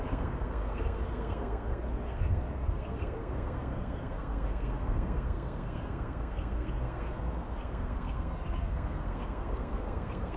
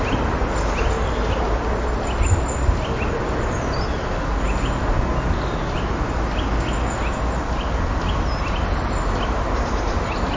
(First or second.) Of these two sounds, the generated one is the first